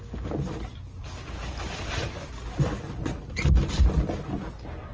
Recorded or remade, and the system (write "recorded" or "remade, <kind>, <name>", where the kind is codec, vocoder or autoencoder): recorded